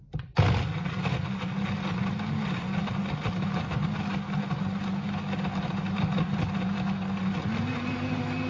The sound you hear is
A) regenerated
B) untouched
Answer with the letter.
B